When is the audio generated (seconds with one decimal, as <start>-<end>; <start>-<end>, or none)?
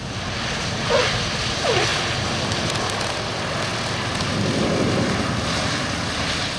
0.0-3.7